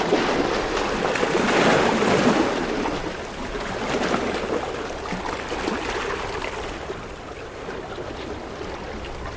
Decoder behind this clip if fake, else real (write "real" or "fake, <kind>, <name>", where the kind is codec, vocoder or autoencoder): real